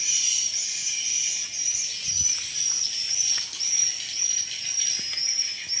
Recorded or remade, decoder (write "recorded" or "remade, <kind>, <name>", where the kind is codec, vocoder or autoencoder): recorded